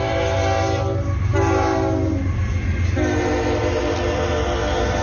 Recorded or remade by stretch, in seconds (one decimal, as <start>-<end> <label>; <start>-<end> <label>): 0.0-5.0 recorded